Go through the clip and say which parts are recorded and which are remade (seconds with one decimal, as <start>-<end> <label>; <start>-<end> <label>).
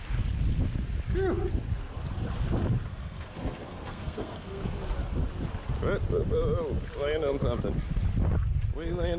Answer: 0.0-2.9 recorded; 2.9-4.6 remade; 4.6-9.2 recorded